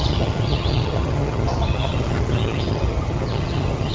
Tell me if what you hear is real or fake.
fake